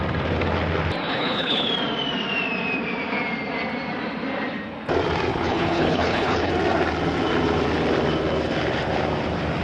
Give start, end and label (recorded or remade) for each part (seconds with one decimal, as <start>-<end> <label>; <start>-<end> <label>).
0.0-1.0 recorded; 1.0-1.7 remade; 1.7-5.3 recorded; 5.3-6.5 remade; 6.5-9.6 recorded